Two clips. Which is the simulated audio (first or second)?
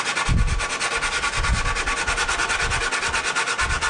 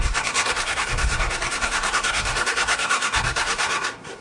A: second